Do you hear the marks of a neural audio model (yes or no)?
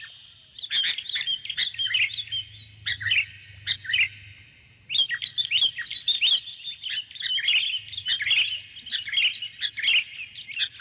no